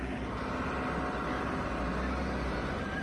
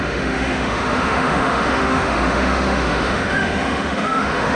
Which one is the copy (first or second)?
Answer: second